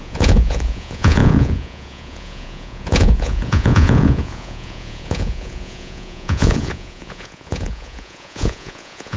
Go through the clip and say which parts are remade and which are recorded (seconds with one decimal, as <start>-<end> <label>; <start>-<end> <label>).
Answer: 0.0-9.2 remade